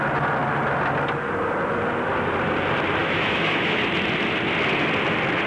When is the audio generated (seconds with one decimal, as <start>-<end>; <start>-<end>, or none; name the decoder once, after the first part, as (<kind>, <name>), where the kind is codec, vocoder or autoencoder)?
3.0-3.8 (autoencoder, DAC-VAE)